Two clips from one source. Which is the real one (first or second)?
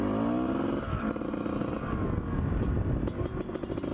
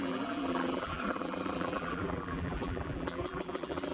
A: first